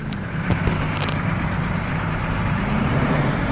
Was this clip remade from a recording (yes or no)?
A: yes